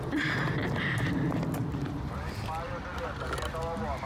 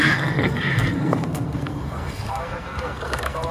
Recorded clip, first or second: first